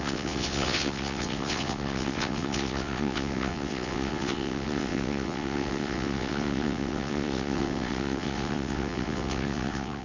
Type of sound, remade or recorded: remade